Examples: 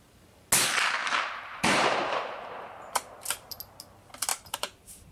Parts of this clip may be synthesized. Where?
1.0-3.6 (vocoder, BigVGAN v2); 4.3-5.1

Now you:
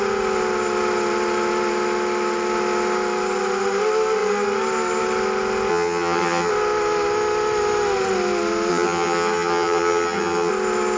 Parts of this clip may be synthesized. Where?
5.7-6.5 (vocoder, HiFi-GAN); 8.7-10.5

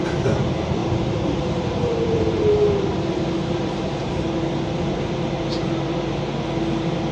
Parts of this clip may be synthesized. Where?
0.8-4.3 (vocoder, BigVGAN v2)

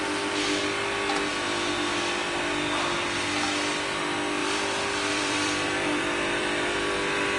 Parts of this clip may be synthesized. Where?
2.2-3.3 (vocoder, BigVGAN v2); 4.4-7.4